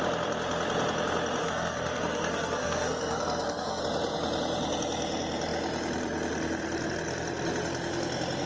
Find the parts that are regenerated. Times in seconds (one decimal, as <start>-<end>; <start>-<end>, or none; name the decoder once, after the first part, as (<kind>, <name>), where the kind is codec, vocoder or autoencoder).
1.4-3.8 (codec, SNAC)